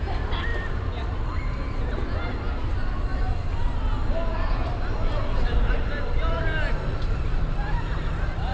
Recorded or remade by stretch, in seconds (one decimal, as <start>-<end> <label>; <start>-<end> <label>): 0.0-8.5 recorded